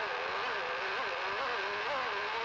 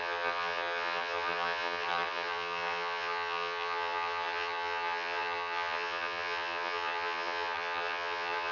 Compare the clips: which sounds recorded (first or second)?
first